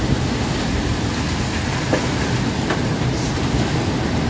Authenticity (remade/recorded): recorded